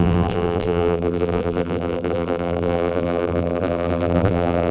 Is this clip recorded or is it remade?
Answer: remade